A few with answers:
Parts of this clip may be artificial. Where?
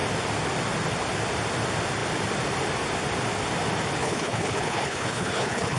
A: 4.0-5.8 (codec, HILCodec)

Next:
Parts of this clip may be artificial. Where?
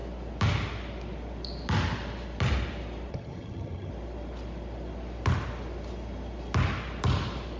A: 3.1-3.9 (vocoder, HiFi-GAN)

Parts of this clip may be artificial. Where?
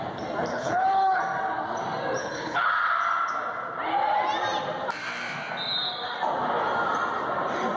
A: 0.5-1.2 (codec, HILCodec); 2.2-2.7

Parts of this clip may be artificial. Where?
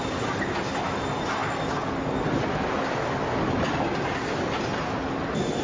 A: none